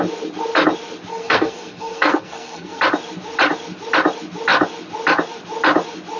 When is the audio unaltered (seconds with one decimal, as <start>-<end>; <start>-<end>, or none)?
0.0-1.1; 2.8-6.2